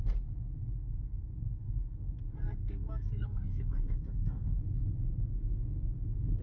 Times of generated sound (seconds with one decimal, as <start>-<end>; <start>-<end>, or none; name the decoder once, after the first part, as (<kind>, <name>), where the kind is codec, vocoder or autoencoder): 0.8-4.6 (codec, SNAC); 5.3-6.4